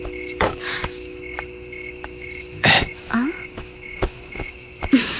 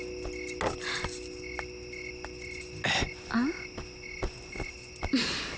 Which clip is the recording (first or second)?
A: second